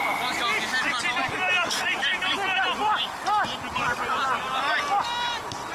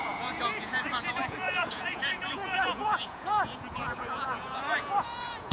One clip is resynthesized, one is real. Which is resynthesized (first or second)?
second